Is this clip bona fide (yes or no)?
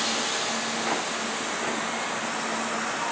yes